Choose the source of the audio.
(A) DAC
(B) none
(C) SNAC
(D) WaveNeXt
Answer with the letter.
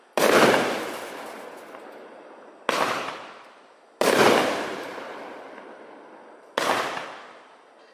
B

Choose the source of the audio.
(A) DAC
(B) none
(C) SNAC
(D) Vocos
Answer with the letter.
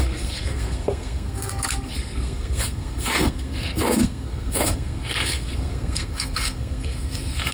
C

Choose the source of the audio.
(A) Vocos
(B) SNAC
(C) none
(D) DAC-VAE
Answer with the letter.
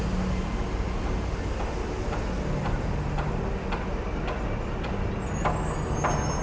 C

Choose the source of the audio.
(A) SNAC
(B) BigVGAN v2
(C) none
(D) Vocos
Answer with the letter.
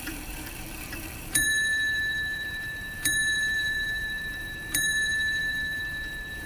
B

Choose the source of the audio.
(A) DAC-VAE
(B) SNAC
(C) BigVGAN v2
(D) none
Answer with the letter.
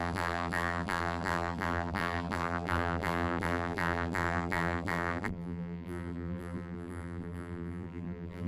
C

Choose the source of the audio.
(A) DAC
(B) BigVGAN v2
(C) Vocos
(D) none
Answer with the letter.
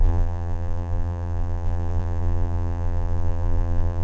B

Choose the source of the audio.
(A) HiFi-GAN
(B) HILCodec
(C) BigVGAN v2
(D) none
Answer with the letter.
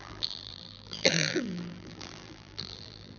C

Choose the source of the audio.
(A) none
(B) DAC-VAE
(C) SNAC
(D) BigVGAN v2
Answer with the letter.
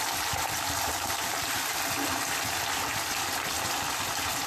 D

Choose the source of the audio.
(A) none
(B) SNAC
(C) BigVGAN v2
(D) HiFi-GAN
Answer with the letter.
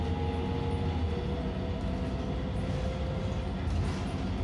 A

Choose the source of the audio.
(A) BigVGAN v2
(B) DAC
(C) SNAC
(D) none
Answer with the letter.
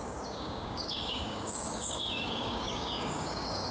B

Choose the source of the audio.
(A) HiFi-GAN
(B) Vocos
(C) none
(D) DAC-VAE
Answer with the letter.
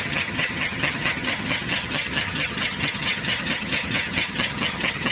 A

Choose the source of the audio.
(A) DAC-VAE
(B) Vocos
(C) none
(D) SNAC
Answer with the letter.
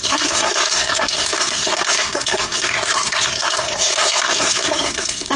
D